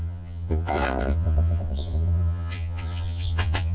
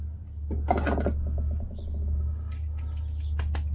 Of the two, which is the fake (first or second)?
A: first